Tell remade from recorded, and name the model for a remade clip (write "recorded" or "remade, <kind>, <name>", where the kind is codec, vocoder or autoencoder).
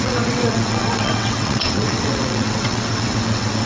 remade, vocoder, WaveNeXt